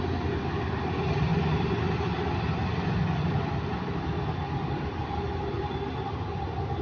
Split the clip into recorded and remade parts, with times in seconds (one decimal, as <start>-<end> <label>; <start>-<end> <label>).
0.0-6.8 recorded